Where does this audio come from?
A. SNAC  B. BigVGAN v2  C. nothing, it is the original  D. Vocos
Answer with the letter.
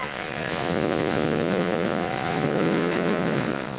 D